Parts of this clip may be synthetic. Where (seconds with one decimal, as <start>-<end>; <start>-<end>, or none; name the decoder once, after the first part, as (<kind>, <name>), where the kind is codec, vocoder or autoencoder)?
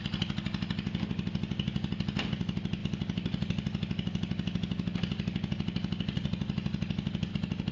none